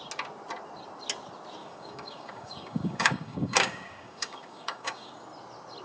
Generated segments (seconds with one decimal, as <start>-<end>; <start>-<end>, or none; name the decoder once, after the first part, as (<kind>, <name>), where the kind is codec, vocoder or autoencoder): 1.6-5.1 (codec, DAC)